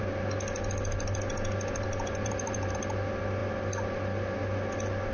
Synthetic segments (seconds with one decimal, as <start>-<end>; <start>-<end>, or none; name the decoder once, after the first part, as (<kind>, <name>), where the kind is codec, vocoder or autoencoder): 2.2-2.7 (vocoder, BigVGAN v2)